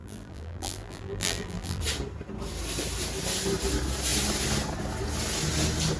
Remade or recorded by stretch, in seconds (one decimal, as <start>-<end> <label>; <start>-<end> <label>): 0.0-1.8 remade; 1.8-6.0 recorded